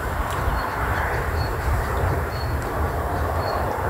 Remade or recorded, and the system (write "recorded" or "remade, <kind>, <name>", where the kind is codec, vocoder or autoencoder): remade, vocoder, BigVGAN v2